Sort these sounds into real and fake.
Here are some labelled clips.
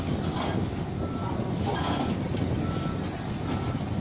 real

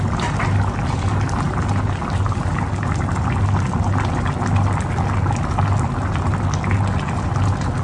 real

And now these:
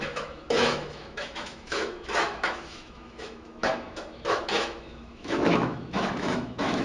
fake